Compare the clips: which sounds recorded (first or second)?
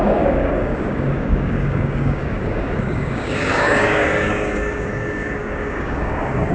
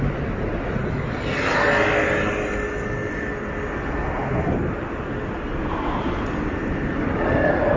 second